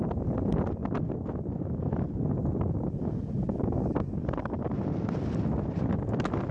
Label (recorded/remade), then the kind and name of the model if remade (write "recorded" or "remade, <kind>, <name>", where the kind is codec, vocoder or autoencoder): recorded